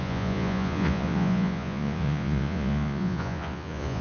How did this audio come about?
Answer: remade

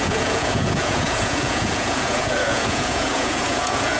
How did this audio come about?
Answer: remade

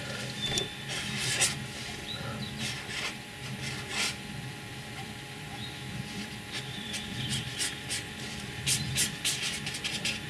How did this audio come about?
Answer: remade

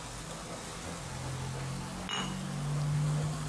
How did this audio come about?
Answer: recorded